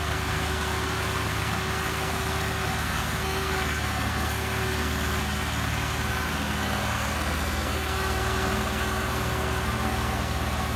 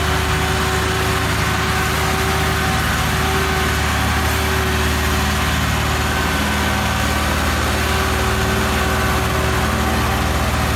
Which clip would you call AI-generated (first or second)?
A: first